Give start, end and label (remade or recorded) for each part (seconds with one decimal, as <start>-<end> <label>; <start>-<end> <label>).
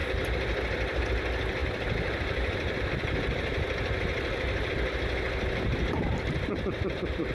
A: 0.0-1.6 recorded; 1.6-4.7 remade; 4.7-7.3 recorded